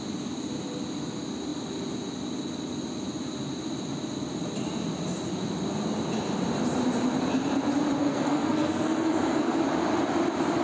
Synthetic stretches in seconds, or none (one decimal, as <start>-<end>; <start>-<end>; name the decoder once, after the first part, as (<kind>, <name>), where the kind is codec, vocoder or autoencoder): 8.0-9.6 (codec, SNAC)